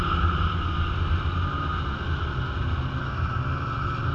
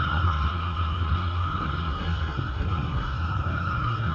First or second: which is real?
first